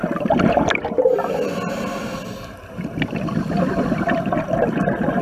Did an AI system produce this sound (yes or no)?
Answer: no